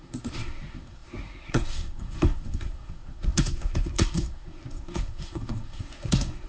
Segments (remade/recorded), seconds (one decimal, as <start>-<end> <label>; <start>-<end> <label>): 0.0-6.5 remade